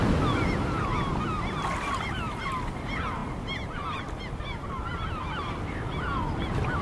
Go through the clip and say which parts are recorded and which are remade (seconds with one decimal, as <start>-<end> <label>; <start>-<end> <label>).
0.0-6.8 recorded